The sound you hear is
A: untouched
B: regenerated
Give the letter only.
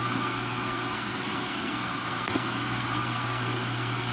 B